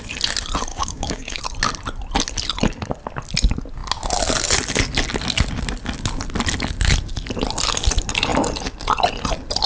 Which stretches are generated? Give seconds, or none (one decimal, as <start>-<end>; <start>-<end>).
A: 0.7-1.4